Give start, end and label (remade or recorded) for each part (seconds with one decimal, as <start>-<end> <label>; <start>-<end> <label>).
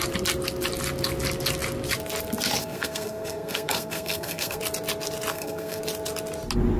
0.0-2.6 recorded; 2.6-4.6 remade; 4.6-5.3 recorded; 5.3-5.8 remade; 5.8-6.8 recorded